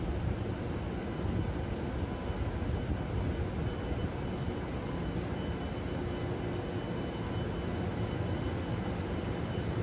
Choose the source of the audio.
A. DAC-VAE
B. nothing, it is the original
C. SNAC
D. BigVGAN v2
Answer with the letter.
B